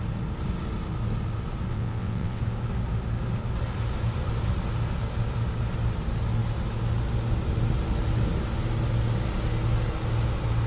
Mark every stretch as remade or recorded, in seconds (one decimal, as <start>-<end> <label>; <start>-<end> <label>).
0.0-1.7 recorded; 1.7-2.4 remade; 2.4-10.7 recorded